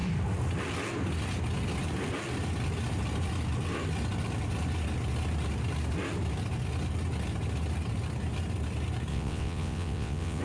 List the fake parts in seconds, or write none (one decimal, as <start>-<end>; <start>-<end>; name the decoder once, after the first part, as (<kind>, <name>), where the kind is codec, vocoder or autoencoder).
9.1-10.4 (vocoder, WaveNeXt)